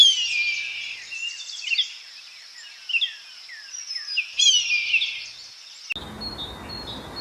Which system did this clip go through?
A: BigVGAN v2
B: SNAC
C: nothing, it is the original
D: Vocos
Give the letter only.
C